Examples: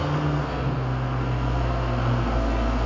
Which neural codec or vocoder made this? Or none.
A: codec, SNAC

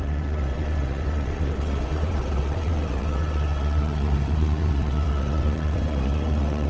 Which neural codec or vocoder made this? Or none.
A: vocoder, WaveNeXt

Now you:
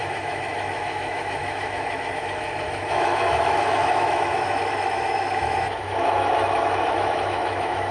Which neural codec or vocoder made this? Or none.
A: autoencoder, DAC-VAE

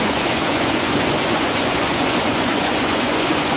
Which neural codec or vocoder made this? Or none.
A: vocoder, Vocos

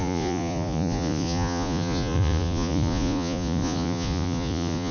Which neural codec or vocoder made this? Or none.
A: vocoder, Vocos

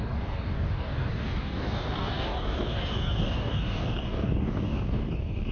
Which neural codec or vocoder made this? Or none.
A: codec, DAC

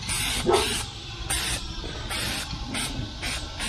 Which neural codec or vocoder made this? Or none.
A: vocoder, BigVGAN v2